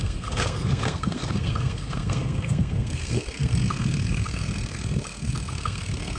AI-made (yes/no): yes